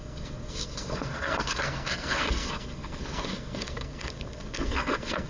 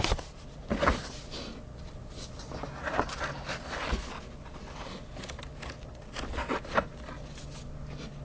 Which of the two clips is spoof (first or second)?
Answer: first